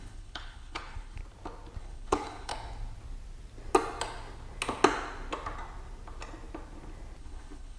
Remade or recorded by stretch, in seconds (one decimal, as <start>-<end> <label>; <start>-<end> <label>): 0.0-1.2 remade; 1.2-1.8 recorded; 1.8-2.5 remade; 2.5-7.2 recorded; 7.2-7.8 remade